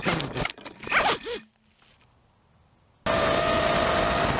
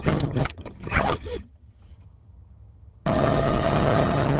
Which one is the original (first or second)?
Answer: first